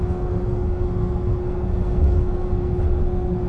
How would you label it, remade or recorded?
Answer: remade